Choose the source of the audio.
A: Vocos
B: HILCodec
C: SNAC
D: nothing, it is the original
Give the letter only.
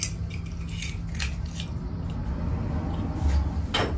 D